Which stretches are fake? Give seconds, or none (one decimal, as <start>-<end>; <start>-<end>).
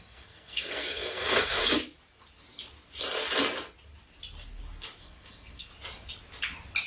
0.0-1.6; 5.0-5.7